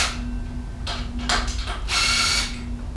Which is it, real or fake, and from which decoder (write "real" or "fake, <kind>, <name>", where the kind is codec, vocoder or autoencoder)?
real